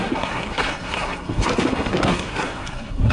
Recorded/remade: remade